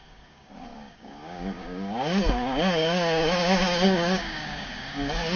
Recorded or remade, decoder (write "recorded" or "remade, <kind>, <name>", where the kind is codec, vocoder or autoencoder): remade, codec, DAC